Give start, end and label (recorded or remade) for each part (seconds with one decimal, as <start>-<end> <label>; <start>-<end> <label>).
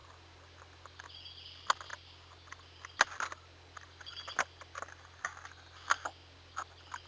0.0-7.1 recorded